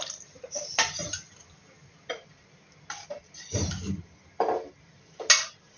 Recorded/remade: recorded